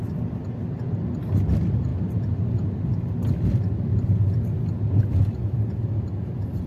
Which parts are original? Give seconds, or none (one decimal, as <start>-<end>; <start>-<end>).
0.0-6.7